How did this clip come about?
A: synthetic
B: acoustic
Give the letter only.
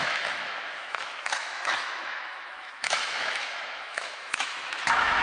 A